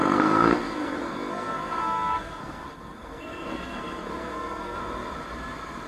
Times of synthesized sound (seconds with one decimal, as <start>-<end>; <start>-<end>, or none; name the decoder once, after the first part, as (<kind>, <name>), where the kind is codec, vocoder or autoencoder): 0.0-4.8 (codec, SNAC)